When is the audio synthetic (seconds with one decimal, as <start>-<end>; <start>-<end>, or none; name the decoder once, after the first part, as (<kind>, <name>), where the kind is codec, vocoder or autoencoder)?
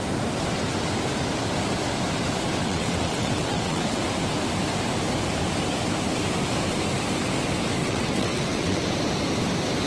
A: 2.6-4.0 (vocoder, WaveNeXt); 7.8-8.8